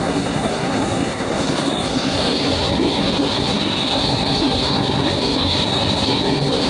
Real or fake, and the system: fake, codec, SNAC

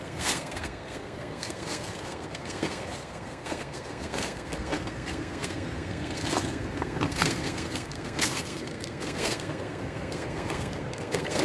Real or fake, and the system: fake, codec, SNAC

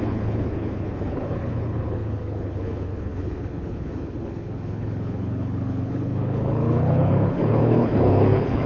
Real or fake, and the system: fake, codec, HILCodec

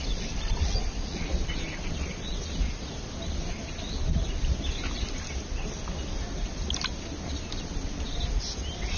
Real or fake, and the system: real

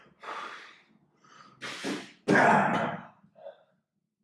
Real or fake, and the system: real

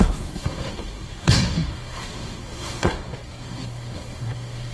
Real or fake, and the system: fake, codec, SNAC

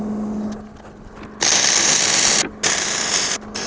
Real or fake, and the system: real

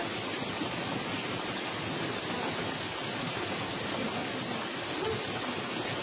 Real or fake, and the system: real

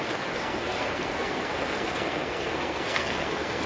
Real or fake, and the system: fake, codec, SNAC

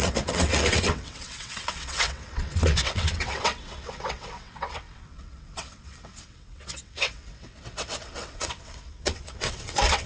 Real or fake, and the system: fake, vocoder, WaveNeXt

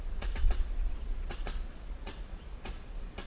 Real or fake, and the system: fake, vocoder, Vocos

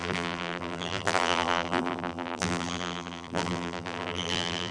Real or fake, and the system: fake, vocoder, BigVGAN v2